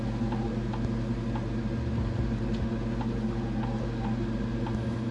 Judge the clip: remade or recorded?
recorded